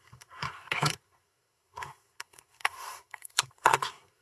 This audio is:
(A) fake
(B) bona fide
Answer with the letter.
A